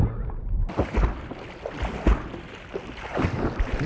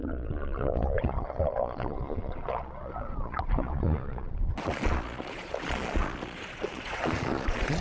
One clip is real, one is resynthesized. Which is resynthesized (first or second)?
second